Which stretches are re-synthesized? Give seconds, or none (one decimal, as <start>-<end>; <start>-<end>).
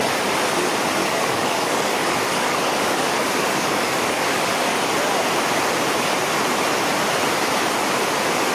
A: 1.0-4.9